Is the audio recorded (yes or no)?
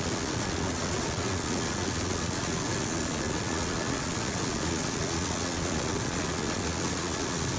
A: no